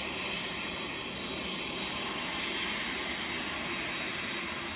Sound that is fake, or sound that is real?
real